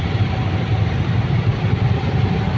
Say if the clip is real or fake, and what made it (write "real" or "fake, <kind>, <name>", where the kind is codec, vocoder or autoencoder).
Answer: real